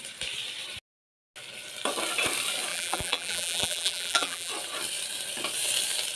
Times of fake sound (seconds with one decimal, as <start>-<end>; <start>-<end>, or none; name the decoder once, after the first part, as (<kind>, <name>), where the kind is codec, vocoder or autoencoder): 2.7-4.5 (vocoder, BigVGAN v2)